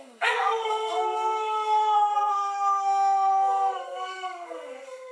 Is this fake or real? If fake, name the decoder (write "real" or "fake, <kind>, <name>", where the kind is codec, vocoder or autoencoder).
fake, codec, SNAC